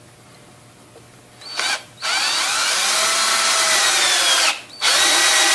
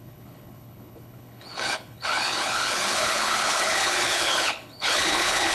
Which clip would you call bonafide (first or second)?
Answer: first